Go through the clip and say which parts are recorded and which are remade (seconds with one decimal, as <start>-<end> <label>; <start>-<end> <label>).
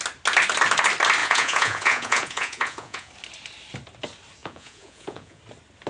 0.0-1.2 recorded; 1.2-3.1 remade; 3.1-4.4 recorded; 4.4-5.4 remade; 5.4-5.9 recorded